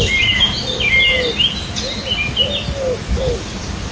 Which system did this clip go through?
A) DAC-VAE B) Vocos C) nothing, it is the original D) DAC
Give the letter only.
C